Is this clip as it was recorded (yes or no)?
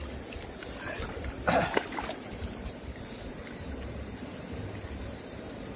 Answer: yes